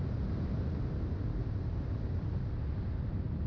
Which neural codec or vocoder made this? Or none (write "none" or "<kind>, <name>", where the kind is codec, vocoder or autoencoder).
none